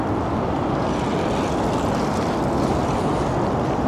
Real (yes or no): yes